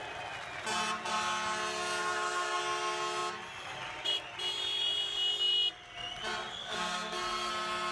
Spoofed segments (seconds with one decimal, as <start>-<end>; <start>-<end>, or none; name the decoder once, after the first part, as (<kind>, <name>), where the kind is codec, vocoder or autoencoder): 2.0-2.6 (codec, SNAC); 6.6-7.5